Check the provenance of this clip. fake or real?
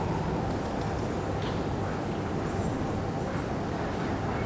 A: real